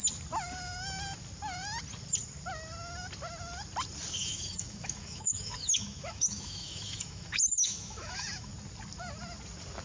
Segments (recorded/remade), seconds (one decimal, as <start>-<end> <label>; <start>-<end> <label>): 0.0-4.2 recorded; 4.2-8.5 remade; 8.5-9.8 recorded